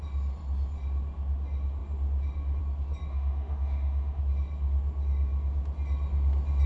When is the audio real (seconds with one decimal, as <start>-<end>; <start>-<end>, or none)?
0.0-3.1; 4.2-6.7